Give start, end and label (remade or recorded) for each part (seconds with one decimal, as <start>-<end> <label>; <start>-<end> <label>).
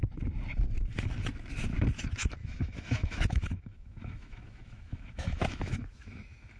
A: 0.0-2.4 recorded; 2.4-6.6 remade